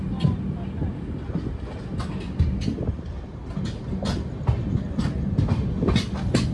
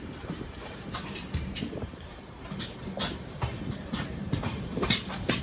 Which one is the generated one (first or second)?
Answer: second